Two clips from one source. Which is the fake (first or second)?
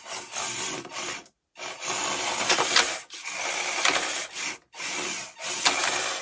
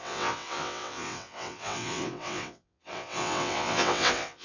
second